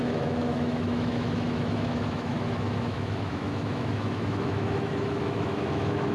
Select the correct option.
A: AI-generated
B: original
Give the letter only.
A